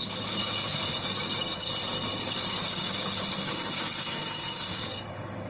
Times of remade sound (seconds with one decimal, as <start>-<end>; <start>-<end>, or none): 0.4-1.7; 2.1-5.5